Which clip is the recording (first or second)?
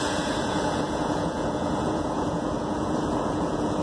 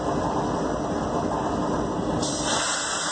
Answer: second